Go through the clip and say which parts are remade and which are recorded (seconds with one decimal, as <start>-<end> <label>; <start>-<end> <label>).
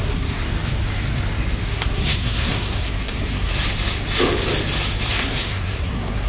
0.0-0.4 remade; 0.4-1.6 recorded; 1.6-3.5 remade; 3.5-5.1 recorded; 5.1-6.3 remade